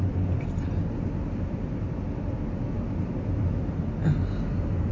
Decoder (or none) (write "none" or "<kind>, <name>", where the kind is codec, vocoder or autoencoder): none